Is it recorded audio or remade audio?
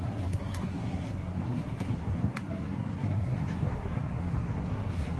remade